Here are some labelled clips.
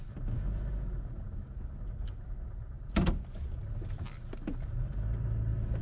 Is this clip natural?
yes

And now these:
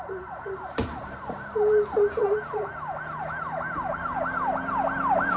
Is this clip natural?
yes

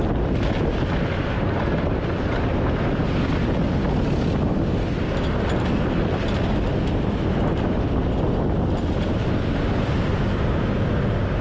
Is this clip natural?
yes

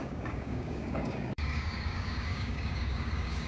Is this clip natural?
no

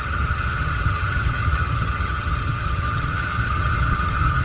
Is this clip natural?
no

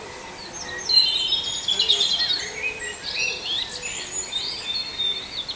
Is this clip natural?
yes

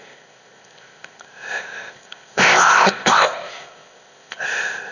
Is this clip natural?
no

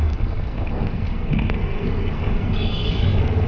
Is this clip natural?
no